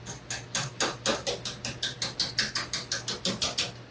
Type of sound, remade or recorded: recorded